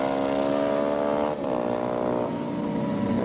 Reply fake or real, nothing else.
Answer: real